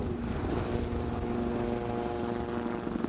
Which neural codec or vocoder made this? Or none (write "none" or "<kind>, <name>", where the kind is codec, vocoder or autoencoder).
none